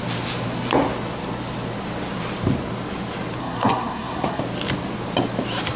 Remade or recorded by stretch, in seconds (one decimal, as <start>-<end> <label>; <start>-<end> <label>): 0.0-3.4 recorded; 3.4-4.4 remade; 4.4-5.8 recorded